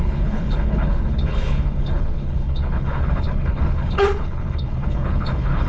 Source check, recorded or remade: remade